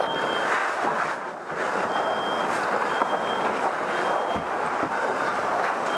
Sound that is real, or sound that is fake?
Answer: real